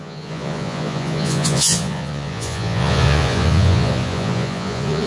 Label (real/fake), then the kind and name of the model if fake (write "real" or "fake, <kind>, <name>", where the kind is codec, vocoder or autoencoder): fake, vocoder, Vocos